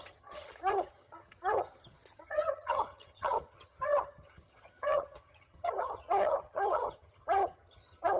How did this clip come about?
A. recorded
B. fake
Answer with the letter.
B